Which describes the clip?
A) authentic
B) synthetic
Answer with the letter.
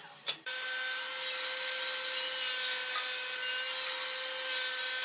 A